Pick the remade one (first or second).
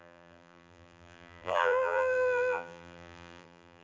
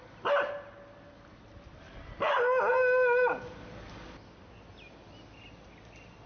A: first